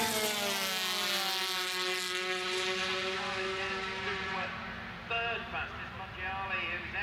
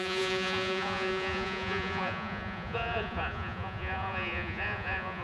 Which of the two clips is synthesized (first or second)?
second